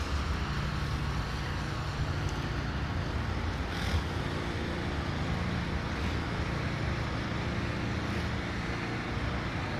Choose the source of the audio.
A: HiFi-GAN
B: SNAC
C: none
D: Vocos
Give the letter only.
C